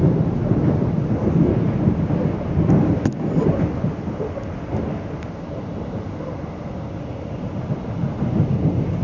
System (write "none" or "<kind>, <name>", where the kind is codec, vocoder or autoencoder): none